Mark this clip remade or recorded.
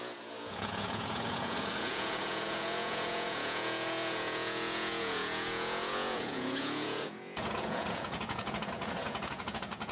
remade